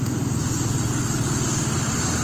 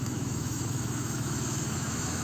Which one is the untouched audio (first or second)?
first